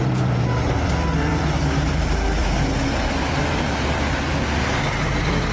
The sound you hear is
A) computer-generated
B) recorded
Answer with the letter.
B